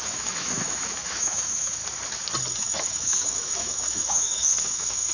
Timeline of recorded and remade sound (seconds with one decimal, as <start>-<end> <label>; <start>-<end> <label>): 0.0-1.8 remade; 1.8-2.6 recorded; 2.6-5.1 remade